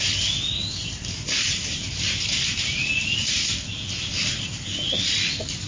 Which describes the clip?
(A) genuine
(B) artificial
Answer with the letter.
A